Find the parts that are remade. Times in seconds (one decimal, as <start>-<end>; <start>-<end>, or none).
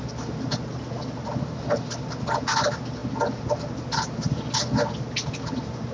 none